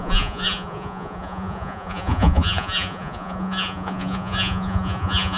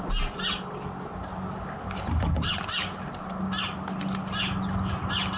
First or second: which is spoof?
first